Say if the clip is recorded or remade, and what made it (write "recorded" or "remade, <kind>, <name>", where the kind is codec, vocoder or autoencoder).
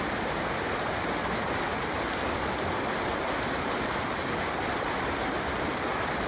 recorded